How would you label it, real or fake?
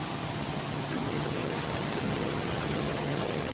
fake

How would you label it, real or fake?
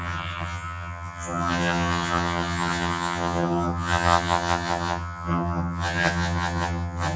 fake